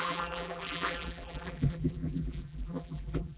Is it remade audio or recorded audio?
remade